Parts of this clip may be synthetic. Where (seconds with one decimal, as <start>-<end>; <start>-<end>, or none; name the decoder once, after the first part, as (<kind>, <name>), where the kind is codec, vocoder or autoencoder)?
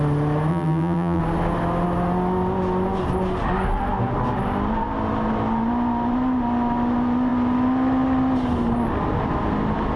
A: 0.5-1.2 (vocoder, BigVGAN v2)